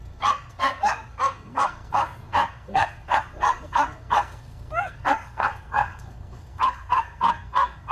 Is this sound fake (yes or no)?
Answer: yes